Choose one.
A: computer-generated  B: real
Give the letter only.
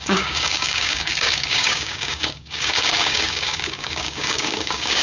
A